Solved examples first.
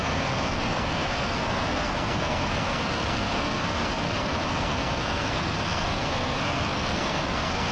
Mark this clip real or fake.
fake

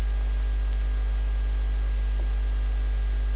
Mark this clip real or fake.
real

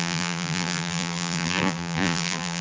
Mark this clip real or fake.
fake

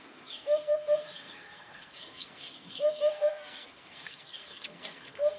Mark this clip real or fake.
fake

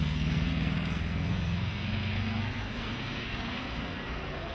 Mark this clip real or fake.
fake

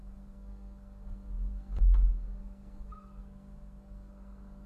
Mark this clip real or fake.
fake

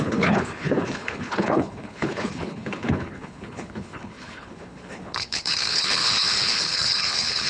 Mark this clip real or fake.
fake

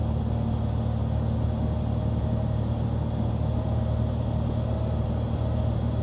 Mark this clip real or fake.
real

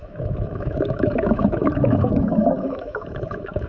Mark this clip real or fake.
fake